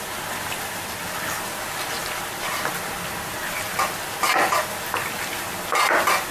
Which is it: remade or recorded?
recorded